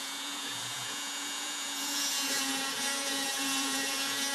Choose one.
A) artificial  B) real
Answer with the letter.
A